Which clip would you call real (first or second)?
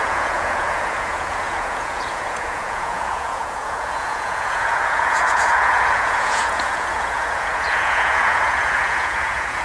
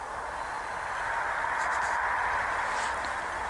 second